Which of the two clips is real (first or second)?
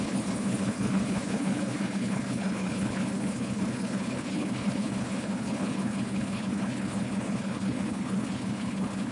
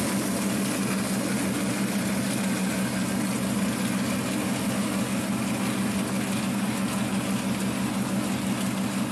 second